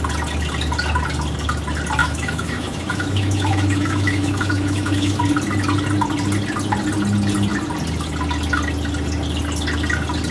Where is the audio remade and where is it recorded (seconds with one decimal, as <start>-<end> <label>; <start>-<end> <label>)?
0.0-2.0 recorded; 2.0-5.2 remade; 5.2-10.3 recorded